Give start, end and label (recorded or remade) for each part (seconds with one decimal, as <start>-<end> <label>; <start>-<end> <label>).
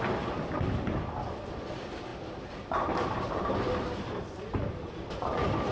0.0-5.7 recorded